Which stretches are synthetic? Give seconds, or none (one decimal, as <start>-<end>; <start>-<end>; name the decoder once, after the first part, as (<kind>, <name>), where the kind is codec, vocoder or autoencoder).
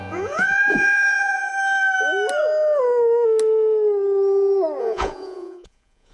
0.0-1.5 (vocoder, Vocos); 4.8-6.1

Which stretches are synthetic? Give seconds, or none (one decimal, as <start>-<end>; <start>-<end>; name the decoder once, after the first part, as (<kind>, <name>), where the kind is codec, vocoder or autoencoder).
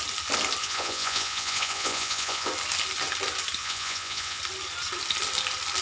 0.6-2.5 (vocoder, Vocos); 3.6-4.4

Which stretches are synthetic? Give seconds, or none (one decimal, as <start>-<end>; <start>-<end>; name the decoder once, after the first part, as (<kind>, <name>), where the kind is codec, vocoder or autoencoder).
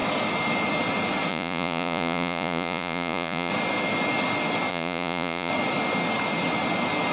1.3-3.5 (vocoder, Vocos); 4.7-5.5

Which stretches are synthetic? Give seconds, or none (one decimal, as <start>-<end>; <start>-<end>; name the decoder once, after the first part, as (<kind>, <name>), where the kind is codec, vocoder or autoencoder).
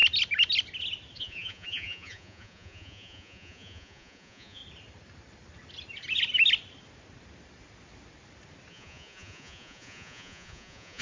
1.2-4.6 (vocoder, Vocos); 8.7-11.0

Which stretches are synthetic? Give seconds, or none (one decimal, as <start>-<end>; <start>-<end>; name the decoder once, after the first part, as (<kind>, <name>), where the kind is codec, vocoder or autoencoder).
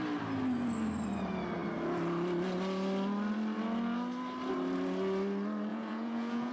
5.7-6.5 (vocoder, Vocos)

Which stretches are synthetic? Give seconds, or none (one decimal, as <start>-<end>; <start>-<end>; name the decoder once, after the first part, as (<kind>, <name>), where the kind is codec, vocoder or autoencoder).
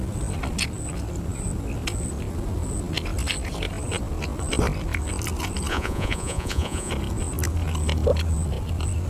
5.7-6.9 (vocoder, Vocos)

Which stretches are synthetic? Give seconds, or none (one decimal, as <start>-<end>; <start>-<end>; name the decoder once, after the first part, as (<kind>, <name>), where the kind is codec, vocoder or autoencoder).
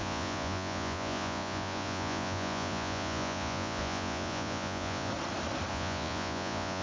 0.0-5.1 (vocoder, Vocos); 5.7-6.8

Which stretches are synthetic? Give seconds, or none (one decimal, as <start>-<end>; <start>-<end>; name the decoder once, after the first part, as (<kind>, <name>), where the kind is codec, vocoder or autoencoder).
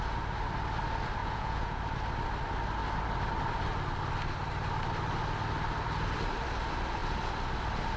1.2-1.8 (vocoder, Vocos)